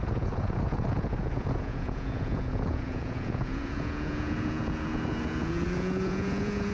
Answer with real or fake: fake